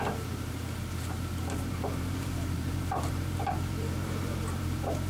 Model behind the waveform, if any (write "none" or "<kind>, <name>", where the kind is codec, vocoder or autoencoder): vocoder, BigVGAN v2